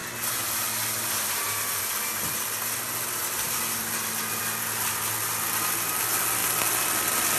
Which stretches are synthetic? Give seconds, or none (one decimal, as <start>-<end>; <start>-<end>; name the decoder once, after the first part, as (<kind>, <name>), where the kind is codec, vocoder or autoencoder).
none

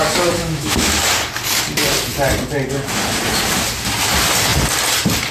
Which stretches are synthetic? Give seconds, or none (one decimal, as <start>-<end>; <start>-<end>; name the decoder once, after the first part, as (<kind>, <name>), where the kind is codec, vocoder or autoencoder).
0.4-1.0 (autoencoder, DAC-VAE)

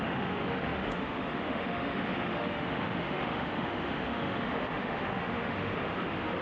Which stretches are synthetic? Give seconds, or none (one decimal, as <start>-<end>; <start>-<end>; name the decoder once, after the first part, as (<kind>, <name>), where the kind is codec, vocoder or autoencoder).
0.0-6.4 (autoencoder, DAC-VAE)

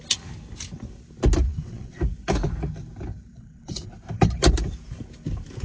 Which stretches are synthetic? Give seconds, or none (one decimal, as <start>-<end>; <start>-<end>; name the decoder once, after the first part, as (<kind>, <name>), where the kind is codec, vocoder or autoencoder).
1.5-2.0 (vocoder, WaveNeXt); 3.3-3.9